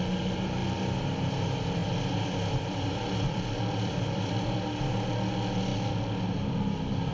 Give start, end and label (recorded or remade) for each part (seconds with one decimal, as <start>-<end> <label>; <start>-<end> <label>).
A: 0.0-0.6 recorded; 0.6-1.3 remade; 1.3-1.8 recorded; 1.8-5.1 remade; 5.1-7.1 recorded